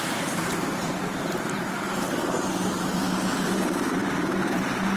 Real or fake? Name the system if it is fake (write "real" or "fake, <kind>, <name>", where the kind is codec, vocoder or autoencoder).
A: fake, vocoder, BigVGAN v2